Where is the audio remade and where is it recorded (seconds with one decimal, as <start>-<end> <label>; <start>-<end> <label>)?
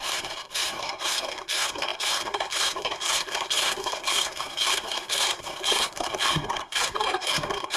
0.0-7.8 remade